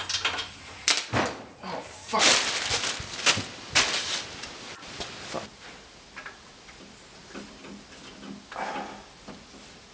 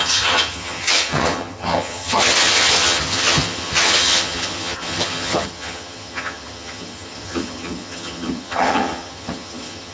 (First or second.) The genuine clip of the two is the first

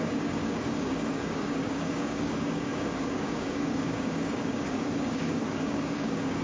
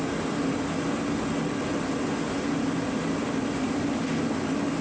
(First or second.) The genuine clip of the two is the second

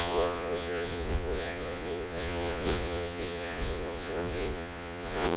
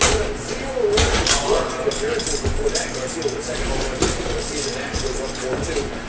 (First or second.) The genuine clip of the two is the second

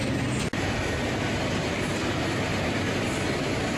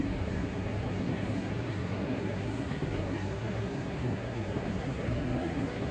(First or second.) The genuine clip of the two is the first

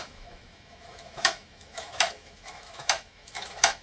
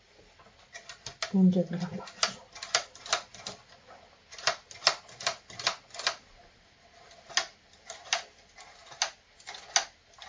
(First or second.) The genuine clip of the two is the second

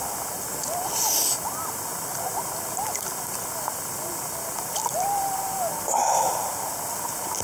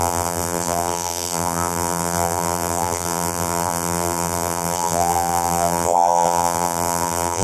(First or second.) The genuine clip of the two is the first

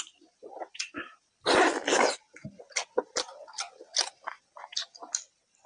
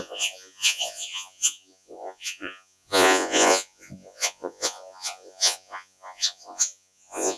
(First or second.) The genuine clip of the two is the first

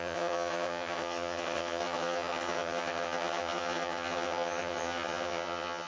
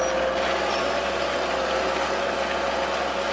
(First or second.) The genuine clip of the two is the second